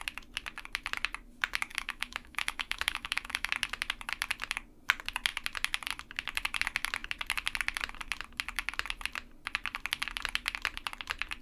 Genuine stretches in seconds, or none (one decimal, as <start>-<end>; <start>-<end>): 0.0-1.7; 3.5-11.4